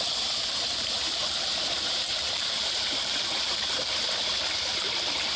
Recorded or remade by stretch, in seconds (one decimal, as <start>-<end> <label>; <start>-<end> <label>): 0.0-5.4 remade